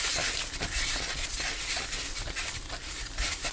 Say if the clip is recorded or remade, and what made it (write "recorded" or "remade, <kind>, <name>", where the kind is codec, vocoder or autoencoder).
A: recorded